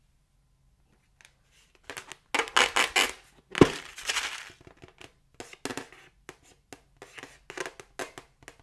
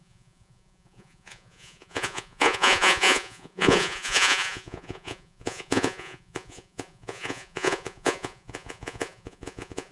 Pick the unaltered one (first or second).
first